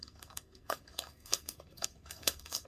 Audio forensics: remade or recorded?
remade